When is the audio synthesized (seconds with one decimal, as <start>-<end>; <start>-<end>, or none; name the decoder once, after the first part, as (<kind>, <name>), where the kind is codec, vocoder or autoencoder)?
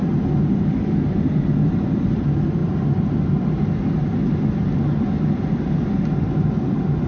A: none